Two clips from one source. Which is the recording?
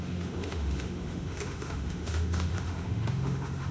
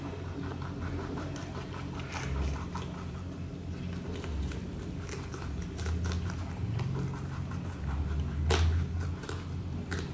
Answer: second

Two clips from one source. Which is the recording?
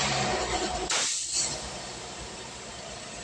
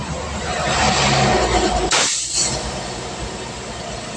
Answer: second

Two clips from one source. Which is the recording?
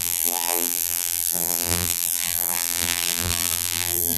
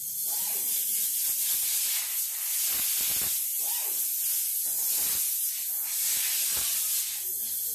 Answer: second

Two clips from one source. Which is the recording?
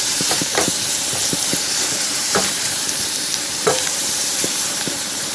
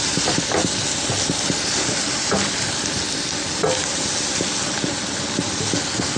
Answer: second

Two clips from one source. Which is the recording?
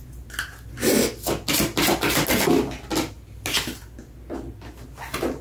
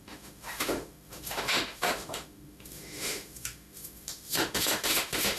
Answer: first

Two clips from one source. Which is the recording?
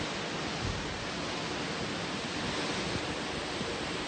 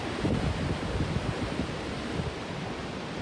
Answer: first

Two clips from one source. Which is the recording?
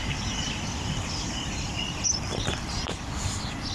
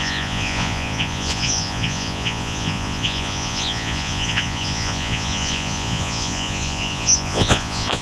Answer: first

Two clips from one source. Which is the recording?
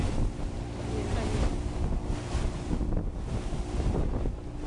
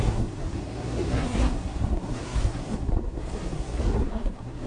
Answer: first